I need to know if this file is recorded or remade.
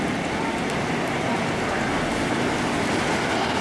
recorded